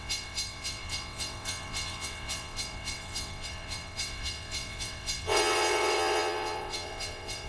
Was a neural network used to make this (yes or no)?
yes